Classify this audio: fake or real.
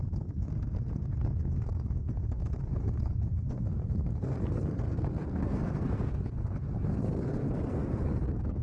fake